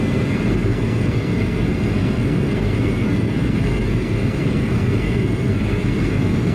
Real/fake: fake